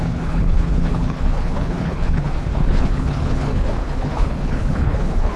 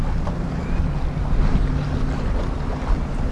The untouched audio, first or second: second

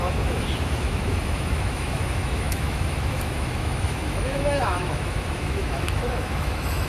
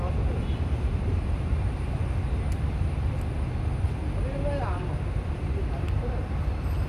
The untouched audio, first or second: second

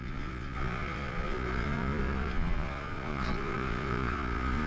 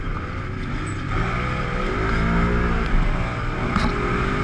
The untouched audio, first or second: second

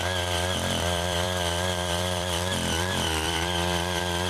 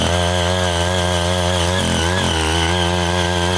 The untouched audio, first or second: second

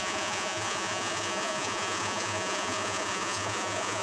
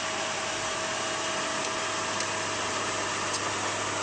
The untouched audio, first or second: second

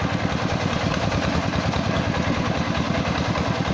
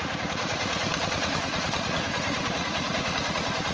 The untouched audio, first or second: first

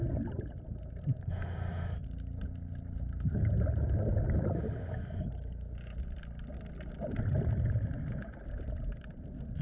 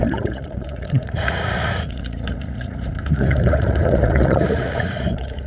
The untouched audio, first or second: first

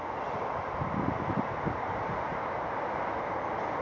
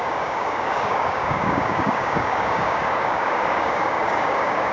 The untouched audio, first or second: first